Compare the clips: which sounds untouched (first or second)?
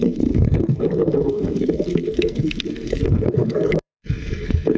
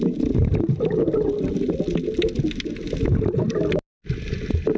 second